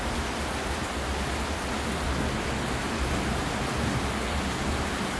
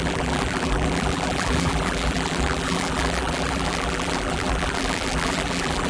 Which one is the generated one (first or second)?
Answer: second